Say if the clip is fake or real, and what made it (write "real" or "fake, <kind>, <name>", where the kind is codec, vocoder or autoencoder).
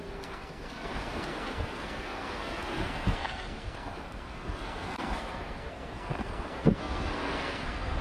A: fake, codec, SNAC